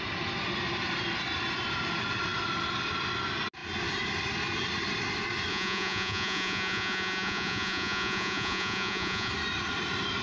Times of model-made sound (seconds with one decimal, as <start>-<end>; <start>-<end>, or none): 5.5-9.3